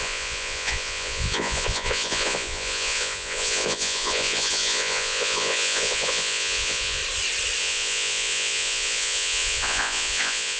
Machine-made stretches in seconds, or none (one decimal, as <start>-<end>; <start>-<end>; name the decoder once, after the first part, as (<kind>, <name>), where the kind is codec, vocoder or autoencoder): 0.0-7.0 (vocoder, Vocos); 7.6-10.6